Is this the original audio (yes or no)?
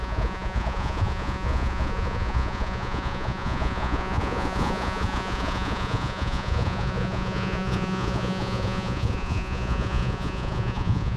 no